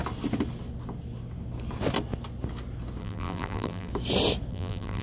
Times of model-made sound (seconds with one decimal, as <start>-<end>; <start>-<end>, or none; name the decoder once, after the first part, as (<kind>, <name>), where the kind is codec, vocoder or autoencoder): 3.0-3.9 (vocoder, BigVGAN v2); 4.5-5.0